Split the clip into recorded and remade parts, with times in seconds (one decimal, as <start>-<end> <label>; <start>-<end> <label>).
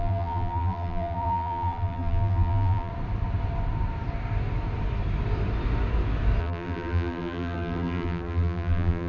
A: 0.0-2.9 remade; 2.9-6.4 recorded; 6.4-9.1 remade